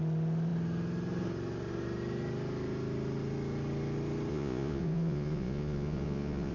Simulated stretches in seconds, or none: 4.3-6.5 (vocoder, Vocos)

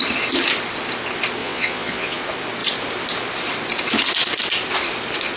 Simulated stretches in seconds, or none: 1.4-2.2 (vocoder, Vocos)

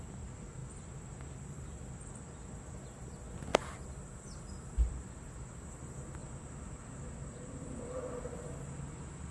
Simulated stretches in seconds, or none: 0.6-2.2 (vocoder, BigVGAN v2); 3.5-4.4; 6.2-8.0

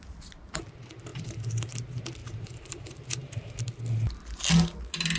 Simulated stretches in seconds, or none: 1.1-1.7 (vocoder, BigVGAN v2); 2.2-3.6

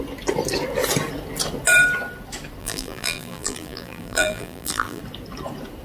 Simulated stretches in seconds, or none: 2.6-5.0 (vocoder, BigVGAN v2)

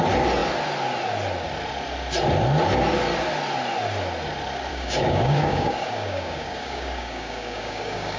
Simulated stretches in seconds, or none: 4.7-8.2 (codec, DAC)

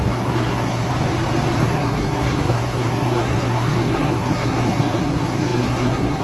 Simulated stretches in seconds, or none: 0.0-0.9 (codec, SNAC); 1.6-6.2